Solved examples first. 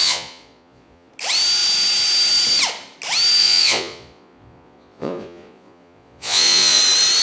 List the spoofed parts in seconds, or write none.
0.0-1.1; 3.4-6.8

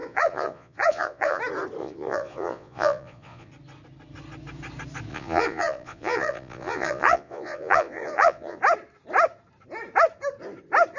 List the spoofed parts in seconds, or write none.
0.0-1.4; 1.8-3.5; 5.1-8.6

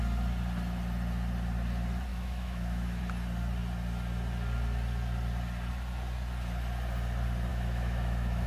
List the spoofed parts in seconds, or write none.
2.1-3.0; 7.5-8.5

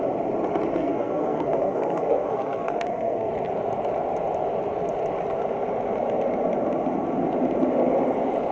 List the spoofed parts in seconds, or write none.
0.7-3.3

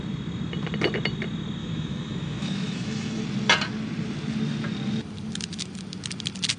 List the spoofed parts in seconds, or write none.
1.6-3.2

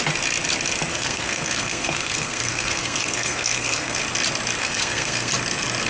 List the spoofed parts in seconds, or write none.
0.9-4.0; 4.6-5.3

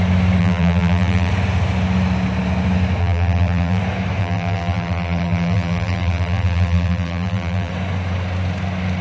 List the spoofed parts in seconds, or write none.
0.4-1.3; 3.0-3.8; 4.2-7.7

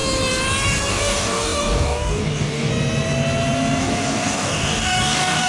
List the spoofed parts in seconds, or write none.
0.9-2.7; 3.8-5.5